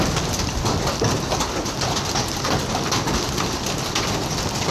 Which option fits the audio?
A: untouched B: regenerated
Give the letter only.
A